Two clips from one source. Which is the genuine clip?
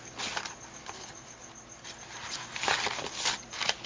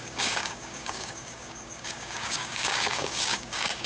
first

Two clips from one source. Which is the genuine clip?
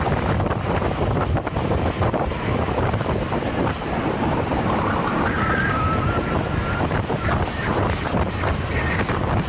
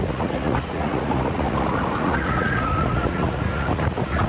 first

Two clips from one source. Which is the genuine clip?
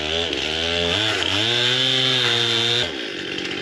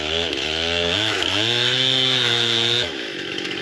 first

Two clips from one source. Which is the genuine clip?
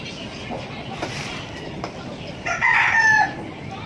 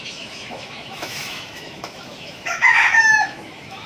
first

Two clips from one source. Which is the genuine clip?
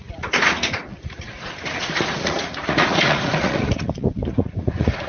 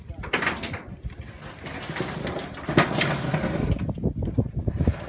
second